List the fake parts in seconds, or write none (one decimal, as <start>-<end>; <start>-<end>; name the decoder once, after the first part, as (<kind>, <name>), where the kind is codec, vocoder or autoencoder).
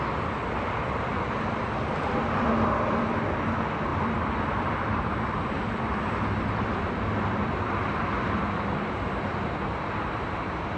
0.0-1.1 (vocoder, BigVGAN v2); 1.8-10.8